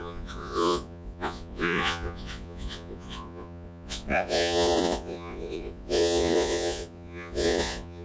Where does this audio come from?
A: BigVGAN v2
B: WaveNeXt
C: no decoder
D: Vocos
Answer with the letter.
D